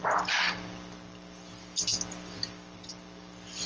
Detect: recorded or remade recorded